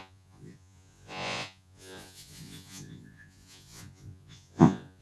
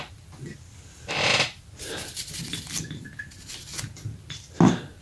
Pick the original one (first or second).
second